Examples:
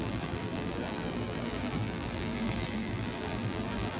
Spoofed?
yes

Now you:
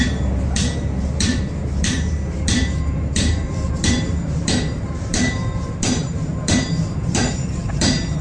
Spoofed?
yes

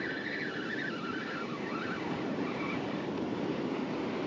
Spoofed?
yes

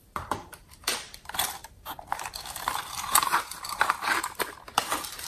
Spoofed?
yes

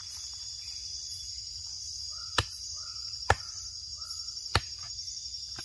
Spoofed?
no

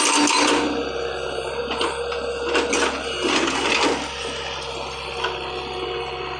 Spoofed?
no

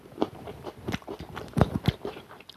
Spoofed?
yes